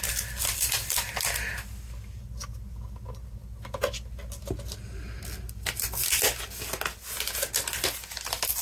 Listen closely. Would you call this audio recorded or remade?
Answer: recorded